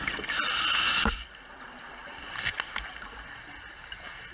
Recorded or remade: recorded